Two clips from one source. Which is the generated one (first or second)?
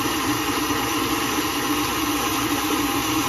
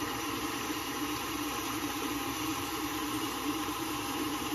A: second